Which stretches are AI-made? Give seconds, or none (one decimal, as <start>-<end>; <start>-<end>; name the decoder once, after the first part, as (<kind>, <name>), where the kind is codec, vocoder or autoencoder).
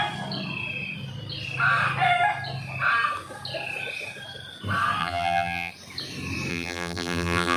5.0-5.7 (vocoder, BigVGAN v2); 6.5-7.6